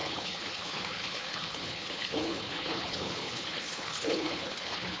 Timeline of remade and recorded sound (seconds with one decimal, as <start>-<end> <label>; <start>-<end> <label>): 0.0-5.0 remade